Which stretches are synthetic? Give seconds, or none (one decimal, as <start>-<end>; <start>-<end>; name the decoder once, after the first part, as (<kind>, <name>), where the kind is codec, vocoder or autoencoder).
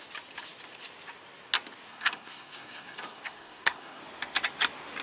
1.9-4.0 (codec, SNAC)